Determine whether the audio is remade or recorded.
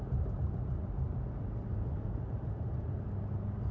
recorded